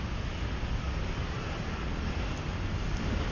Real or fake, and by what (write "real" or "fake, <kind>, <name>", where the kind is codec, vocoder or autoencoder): real